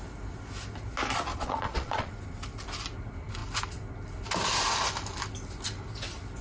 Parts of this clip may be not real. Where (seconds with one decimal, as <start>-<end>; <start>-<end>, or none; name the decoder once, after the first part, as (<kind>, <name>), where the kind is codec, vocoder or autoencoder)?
1.3-2.1 (vocoder, Vocos)